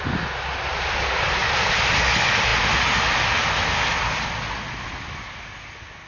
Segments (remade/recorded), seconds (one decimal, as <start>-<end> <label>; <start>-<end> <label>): 0.0-6.1 recorded